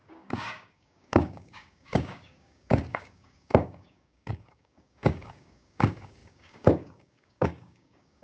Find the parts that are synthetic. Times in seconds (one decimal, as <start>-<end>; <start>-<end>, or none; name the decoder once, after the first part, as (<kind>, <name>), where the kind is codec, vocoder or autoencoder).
0.0-8.2 (codec, DAC)